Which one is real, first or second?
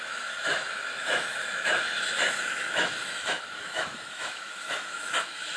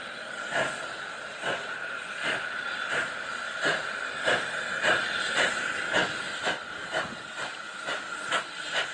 second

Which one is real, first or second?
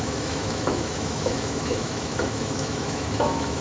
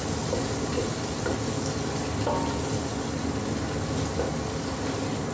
second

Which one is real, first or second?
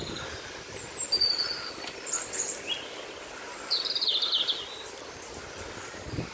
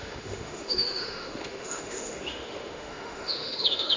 first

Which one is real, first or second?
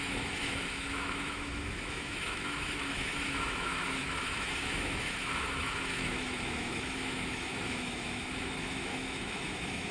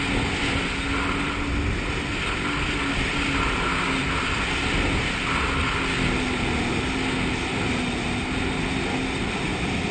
second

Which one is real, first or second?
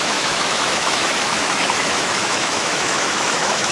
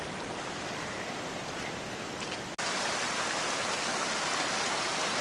second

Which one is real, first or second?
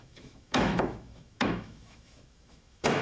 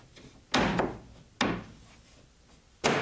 second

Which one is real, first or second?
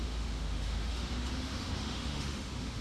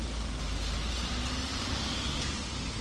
second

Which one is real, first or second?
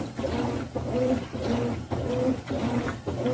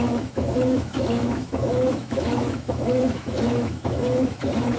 first